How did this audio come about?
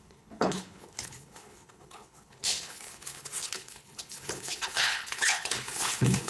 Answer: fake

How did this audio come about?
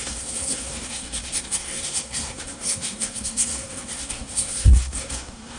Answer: fake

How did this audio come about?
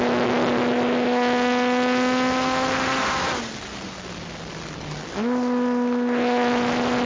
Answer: real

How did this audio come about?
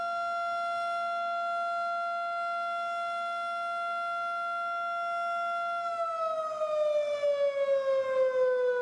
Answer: real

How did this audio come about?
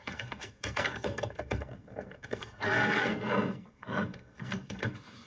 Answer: fake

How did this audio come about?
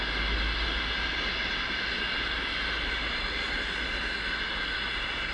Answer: real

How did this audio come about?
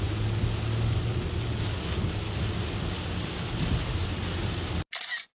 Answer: real